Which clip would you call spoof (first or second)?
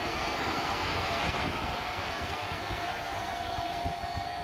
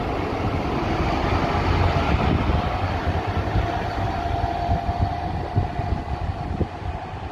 first